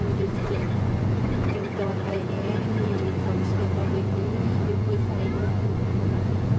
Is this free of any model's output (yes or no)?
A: no